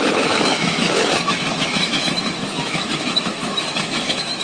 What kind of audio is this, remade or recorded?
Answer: remade